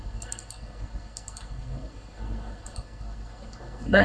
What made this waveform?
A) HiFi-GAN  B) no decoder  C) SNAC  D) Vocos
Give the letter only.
C